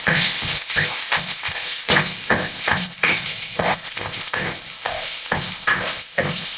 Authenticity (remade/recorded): remade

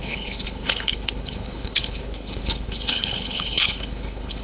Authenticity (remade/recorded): remade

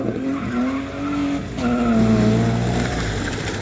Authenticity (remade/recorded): recorded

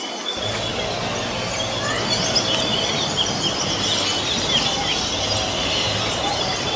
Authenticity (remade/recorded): recorded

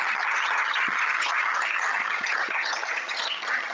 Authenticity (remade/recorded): remade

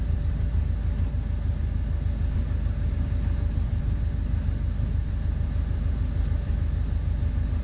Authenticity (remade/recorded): recorded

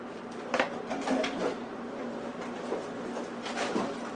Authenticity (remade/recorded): recorded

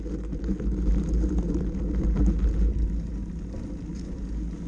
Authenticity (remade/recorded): recorded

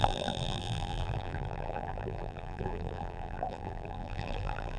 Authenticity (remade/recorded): remade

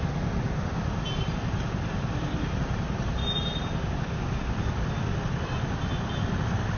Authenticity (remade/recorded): recorded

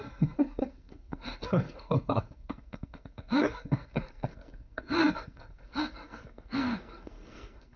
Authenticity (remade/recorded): remade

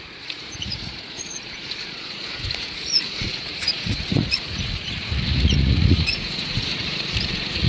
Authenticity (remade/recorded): remade